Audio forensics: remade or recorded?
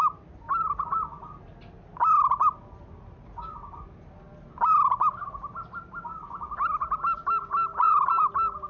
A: recorded